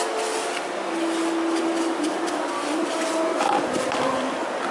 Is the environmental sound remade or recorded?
recorded